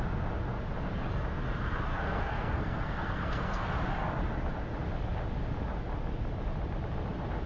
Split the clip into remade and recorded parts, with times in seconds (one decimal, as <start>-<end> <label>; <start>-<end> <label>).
0.0-1.9 recorded; 1.9-3.7 remade; 3.7-7.5 recorded